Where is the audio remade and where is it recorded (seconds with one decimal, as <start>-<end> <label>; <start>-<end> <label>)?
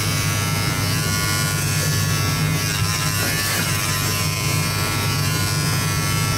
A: 0.0-2.9 recorded; 2.9-5.4 remade; 5.4-6.4 recorded